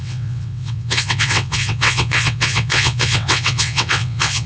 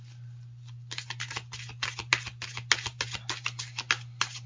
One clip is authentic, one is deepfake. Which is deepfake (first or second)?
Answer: first